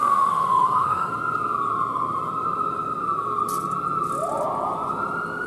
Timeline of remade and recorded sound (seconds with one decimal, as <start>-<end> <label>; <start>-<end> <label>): 0.0-1.1 remade; 1.1-5.5 recorded